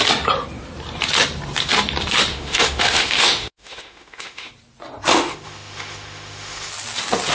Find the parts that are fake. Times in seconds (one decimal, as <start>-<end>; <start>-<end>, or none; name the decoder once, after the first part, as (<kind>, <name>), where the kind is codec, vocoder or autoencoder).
2.3-4.5 (autoencoder, DAC-VAE); 5.1-6.7